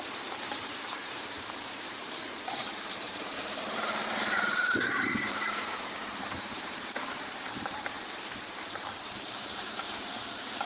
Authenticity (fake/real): fake